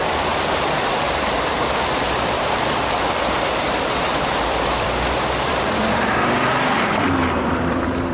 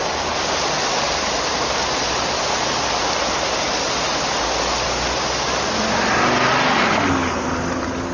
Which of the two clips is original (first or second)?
second